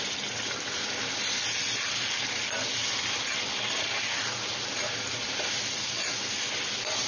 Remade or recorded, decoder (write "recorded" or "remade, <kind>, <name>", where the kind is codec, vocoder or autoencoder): recorded